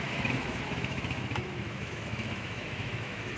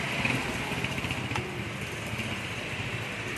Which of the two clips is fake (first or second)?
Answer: first